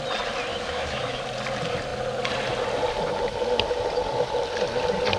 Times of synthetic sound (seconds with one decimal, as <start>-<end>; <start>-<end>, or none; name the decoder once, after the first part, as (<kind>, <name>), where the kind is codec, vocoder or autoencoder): 0.5-1.2 (autoencoder, DAC-VAE)